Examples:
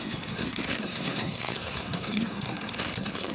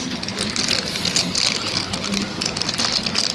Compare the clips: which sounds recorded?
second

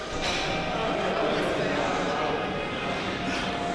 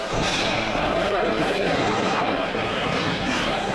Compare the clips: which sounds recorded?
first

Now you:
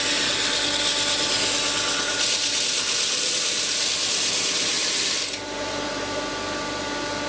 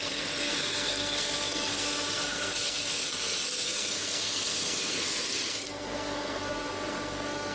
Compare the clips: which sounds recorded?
first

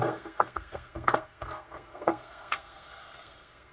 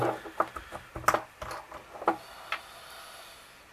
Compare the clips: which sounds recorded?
second